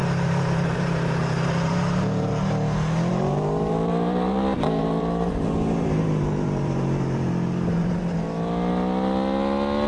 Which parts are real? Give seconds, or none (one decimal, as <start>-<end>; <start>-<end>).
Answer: 2.3-3.1; 8.0-9.9